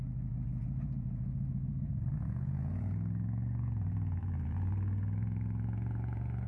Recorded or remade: remade